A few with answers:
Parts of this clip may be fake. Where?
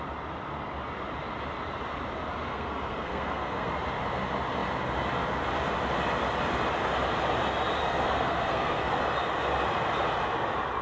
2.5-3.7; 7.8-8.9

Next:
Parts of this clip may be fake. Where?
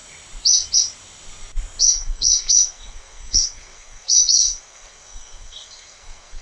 1.8-6.4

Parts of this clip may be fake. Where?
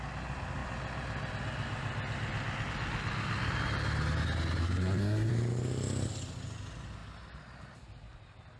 4.6-5.3